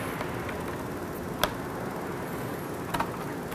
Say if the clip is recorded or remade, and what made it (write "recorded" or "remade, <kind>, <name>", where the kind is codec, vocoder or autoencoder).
recorded